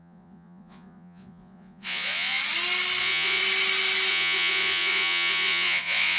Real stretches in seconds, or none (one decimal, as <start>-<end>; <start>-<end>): 2.4-3.0; 3.4-4.1